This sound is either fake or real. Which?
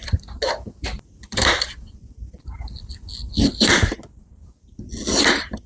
real